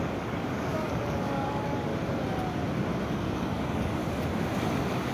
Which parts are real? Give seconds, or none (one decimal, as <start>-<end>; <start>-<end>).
1.9-3.1; 4.0-5.1